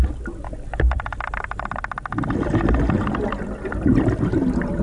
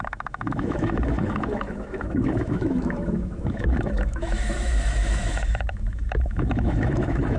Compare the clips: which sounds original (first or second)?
first